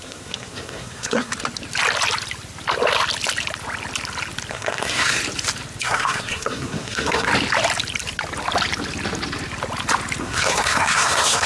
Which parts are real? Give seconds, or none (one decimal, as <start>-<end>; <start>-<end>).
1.3-4.5; 5.2-5.8; 7.3-10.2